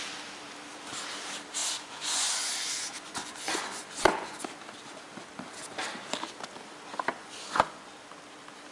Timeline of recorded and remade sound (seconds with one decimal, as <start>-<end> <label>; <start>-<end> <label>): 0.0-1.6 recorded; 1.6-4.4 remade; 4.4-7.1 recorded; 7.1-7.9 remade; 7.9-8.7 recorded

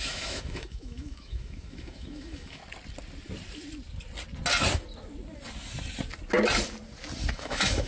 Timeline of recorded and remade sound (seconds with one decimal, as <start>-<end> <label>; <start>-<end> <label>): 0.0-2.6 remade; 2.6-7.3 recorded; 7.3-7.9 remade

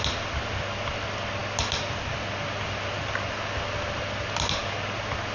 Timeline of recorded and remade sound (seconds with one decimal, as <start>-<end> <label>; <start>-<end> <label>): 0.0-5.3 recorded